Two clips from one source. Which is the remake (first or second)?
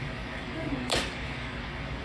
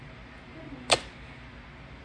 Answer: first